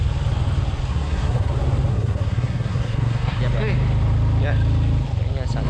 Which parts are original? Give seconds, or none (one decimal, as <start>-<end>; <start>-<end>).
0.0-0.9; 1.5-1.9; 3.4-5.7